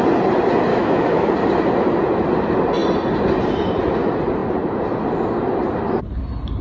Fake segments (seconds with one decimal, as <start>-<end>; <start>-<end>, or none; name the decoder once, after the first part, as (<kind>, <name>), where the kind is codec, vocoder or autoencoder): 0.7-1.3 (autoencoder, DAC-VAE)